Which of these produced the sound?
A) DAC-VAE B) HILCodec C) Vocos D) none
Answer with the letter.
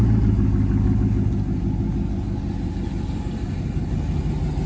D